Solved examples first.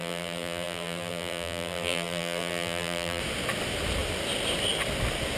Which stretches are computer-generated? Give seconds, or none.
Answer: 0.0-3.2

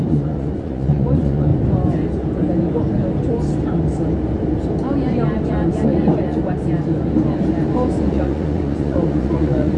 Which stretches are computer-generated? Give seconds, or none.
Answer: 0.0-1.5; 5.7-6.4; 8.0-9.8